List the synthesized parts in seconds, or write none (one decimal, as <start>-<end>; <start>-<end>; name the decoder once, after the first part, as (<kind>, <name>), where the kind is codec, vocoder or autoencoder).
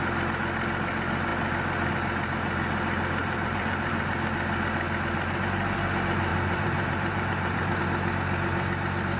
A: 3.2-4.1 (vocoder, BigVGAN v2); 6.3-7.8